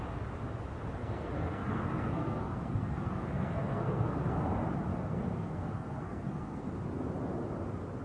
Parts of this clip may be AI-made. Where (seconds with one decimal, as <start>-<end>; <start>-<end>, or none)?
1.0-4.5; 4.9-6.7